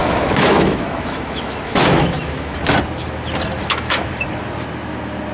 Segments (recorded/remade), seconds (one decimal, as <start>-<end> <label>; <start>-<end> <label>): 0.0-2.6 remade; 2.6-3.6 recorded; 3.6-4.2 remade; 4.2-5.3 recorded